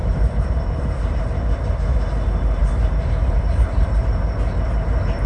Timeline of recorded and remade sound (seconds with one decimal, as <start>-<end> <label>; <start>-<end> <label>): 0.0-1.2 remade; 1.2-2.6 recorded; 2.6-5.3 remade